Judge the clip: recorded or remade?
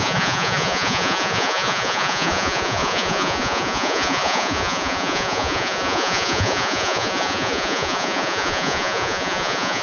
remade